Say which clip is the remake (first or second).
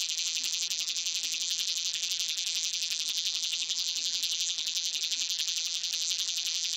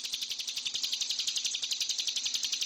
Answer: first